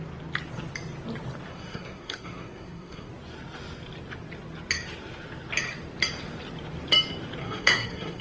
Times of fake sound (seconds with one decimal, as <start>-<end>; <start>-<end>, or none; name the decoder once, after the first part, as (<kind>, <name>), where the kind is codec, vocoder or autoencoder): 1.5-3.1 (codec, SNAC); 7.4-8.2